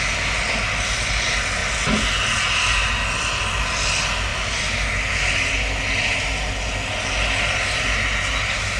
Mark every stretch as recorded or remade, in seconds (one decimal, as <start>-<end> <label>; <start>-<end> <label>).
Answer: 0.0-8.8 recorded